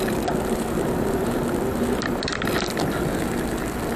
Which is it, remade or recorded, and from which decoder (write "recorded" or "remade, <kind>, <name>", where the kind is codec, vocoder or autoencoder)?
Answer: recorded